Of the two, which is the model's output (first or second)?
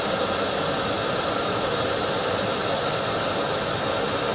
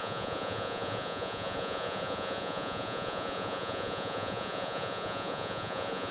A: second